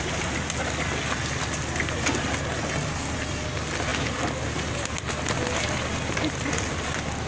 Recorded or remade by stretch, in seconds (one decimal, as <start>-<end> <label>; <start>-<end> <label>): 0.0-7.3 recorded